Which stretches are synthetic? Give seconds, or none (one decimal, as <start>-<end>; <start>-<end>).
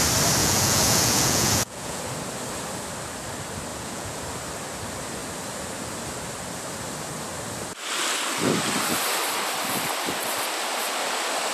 0.4-2.0; 3.7-4.2